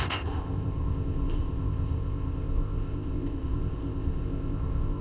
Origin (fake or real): fake